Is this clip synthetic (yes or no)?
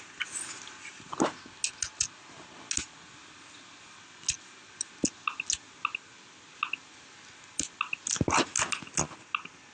no